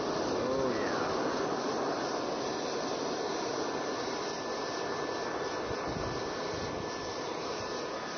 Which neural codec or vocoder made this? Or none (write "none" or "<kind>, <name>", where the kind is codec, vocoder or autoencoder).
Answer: none